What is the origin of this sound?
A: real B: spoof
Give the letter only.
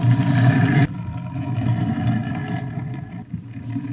B